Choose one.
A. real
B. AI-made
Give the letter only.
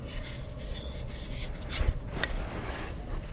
B